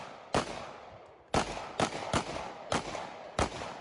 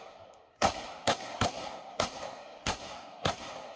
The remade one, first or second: second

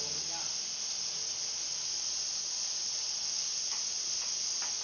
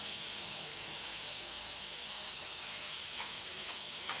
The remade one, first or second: second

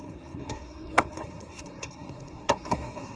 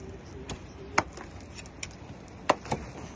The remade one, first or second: first